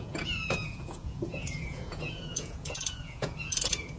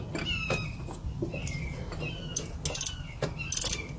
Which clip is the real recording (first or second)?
second